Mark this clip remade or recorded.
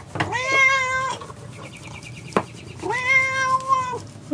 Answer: recorded